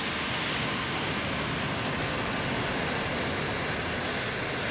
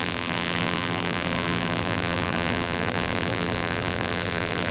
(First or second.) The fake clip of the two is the second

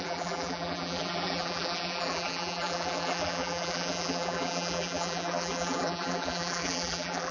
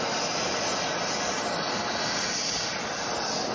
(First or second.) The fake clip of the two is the first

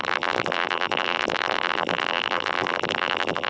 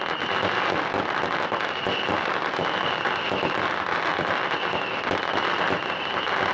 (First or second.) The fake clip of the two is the first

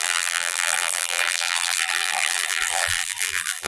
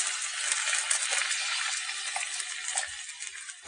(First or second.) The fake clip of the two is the first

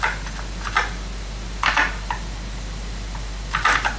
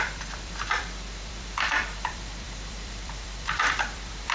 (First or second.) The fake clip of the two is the second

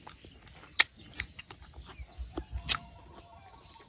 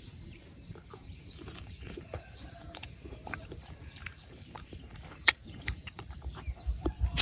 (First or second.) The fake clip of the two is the second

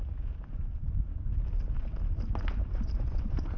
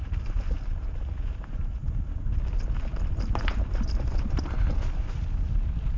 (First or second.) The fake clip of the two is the second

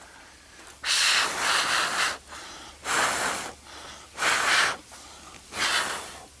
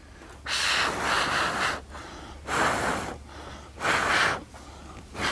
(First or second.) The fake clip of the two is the first